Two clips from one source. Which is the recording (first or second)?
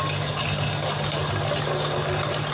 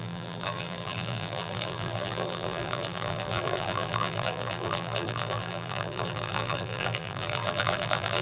first